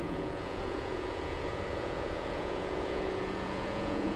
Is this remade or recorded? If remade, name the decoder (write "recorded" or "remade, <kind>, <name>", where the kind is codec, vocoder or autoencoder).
remade, vocoder, Vocos